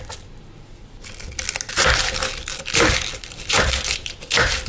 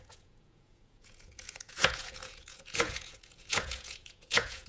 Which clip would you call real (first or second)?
first